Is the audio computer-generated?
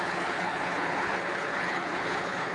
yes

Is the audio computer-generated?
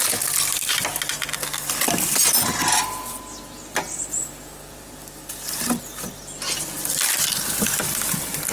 no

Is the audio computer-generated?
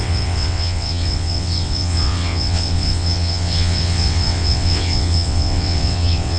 yes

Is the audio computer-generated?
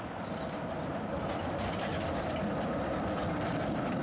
no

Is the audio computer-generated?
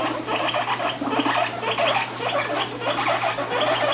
no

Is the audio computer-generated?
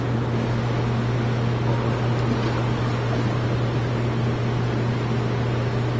no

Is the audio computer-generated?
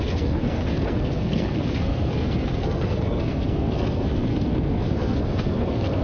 yes